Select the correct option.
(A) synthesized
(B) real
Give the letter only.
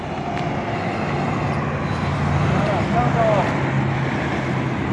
B